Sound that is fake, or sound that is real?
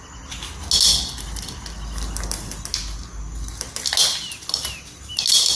real